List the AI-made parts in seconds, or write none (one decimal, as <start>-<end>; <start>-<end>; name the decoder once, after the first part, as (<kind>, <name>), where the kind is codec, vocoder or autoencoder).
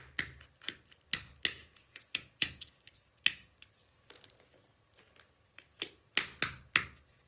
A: 1.6-2.8 (vocoder, Vocos)